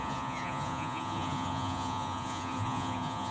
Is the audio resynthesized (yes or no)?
yes